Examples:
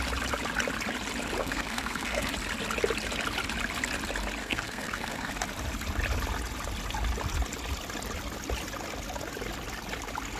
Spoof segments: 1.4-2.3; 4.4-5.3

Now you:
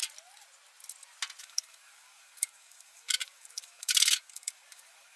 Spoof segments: 1.4-5.2

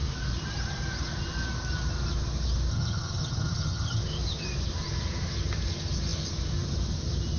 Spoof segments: 2.7-4.0

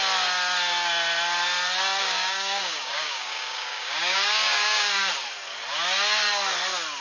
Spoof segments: 2.0-5.1